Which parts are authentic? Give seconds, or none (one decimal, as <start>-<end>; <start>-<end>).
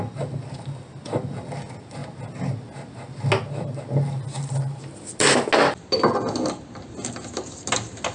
0.0-8.1